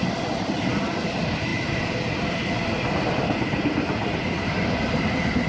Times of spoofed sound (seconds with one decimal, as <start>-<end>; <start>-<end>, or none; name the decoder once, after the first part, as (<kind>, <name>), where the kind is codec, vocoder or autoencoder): 0.0-5.5 (vocoder, BigVGAN v2)